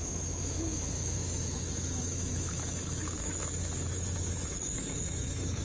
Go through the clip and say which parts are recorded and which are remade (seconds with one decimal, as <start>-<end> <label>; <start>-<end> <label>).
0.0-5.6 remade